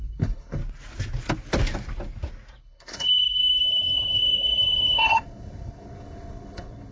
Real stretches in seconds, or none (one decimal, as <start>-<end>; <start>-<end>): 0.6-2.6